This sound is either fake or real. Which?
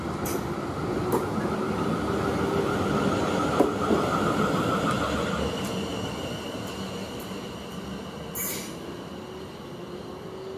real